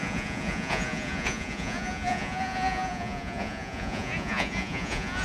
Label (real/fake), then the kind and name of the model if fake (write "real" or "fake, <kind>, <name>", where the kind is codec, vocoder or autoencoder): fake, vocoder, Vocos